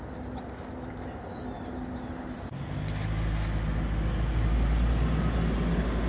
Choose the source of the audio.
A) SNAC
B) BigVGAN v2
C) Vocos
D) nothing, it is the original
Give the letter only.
D